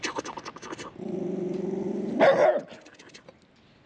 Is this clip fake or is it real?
real